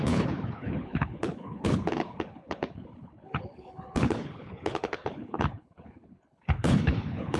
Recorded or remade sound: remade